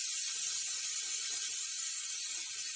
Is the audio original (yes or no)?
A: yes